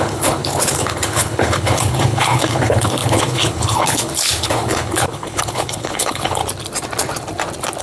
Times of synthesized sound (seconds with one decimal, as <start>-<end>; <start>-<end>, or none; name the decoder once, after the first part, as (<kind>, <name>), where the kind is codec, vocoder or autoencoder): 0.0-6.4 (codec, HILCodec)